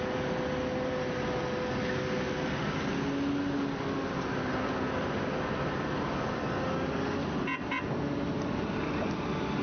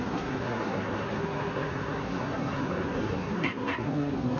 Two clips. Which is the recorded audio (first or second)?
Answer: first